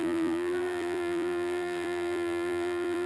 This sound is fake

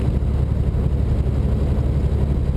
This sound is real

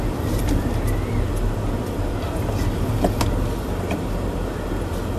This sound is fake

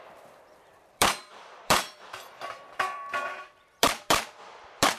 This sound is fake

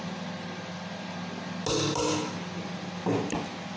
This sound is real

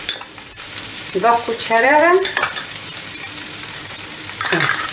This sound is fake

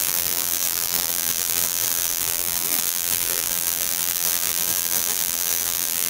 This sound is fake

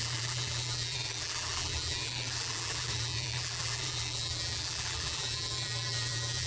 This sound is fake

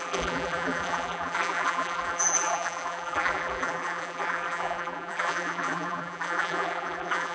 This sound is fake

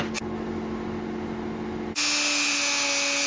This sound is real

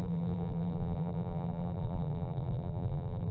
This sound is fake